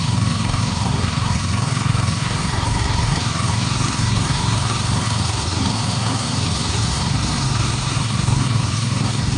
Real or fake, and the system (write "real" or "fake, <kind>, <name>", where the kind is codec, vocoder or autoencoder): fake, codec, SNAC